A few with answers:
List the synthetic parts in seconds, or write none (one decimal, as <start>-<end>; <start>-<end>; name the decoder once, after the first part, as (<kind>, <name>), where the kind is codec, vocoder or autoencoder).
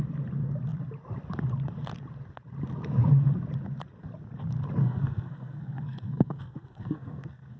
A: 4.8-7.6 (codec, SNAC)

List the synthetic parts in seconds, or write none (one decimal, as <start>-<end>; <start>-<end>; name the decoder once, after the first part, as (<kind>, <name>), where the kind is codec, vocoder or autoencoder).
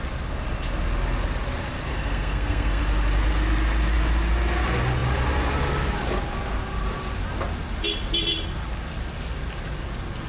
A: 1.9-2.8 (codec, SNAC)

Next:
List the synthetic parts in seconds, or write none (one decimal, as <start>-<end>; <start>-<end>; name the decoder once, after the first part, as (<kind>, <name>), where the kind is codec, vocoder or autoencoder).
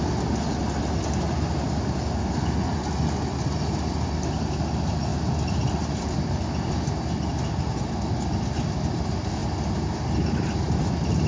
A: none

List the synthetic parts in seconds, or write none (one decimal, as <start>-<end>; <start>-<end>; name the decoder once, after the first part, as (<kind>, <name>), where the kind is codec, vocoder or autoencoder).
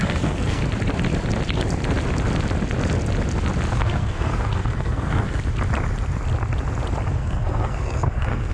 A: 0.0-0.6 (codec, SNAC); 3.7-5.4; 7.1-8.5